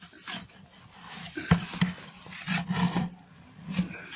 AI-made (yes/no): no